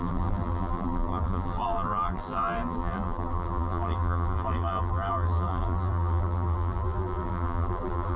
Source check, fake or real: fake